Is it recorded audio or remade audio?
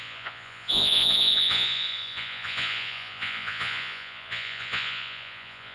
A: remade